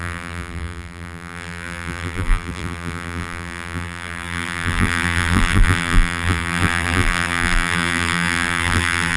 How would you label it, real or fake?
fake